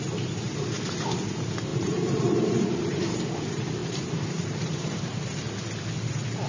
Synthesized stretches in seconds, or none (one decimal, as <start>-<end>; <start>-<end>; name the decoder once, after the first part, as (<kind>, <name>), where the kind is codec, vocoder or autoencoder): 1.7-3.2 (vocoder, BigVGAN v2); 3.8-5.2